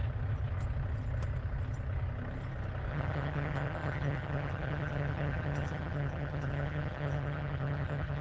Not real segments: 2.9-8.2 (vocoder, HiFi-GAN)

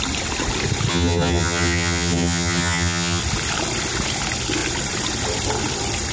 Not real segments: 0.9-3.2 (vocoder, HiFi-GAN)

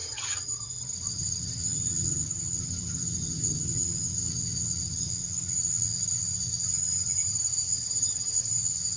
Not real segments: 0.0-9.0 (vocoder, HiFi-GAN)

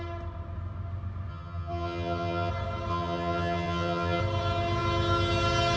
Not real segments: 1.3-2.5 (vocoder, HiFi-GAN); 2.9-4.2

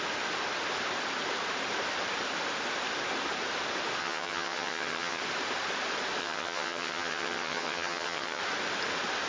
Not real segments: 4.0-5.2 (vocoder, HiFi-GAN); 6.2-8.4

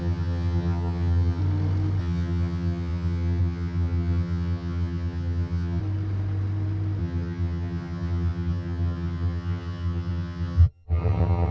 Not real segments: 0.0-1.4 (vocoder, HiFi-GAN); 2.0-5.8; 7.0-11.5

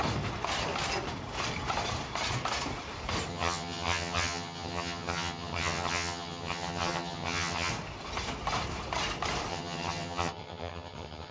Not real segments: 3.3-7.7 (vocoder, HiFi-GAN); 9.5-11.3

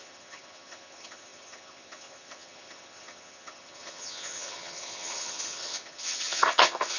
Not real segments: 0.0-7.0 (vocoder, HiFi-GAN)